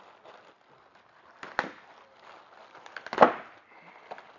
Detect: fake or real real